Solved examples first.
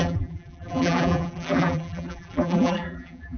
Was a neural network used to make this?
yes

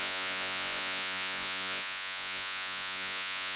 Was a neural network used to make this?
yes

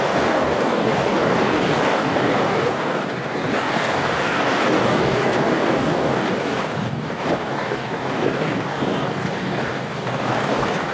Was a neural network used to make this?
yes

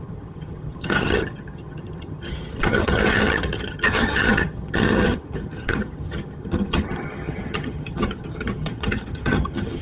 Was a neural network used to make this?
yes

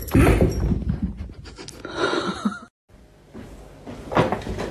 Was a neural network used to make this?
no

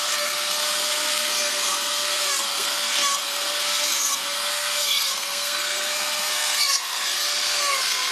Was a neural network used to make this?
yes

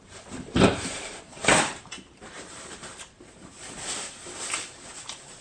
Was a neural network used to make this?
yes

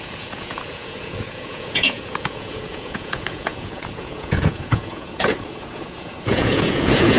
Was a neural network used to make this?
yes